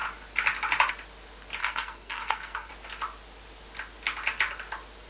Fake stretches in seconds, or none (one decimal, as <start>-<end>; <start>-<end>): 1.6-2.7